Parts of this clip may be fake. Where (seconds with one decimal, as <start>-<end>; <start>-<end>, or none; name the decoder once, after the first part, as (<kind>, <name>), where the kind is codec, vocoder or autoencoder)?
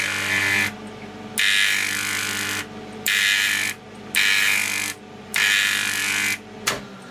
none